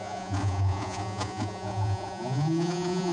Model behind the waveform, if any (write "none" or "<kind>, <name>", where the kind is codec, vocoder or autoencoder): vocoder, Vocos